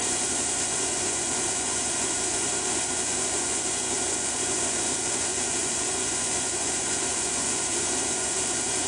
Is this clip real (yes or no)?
no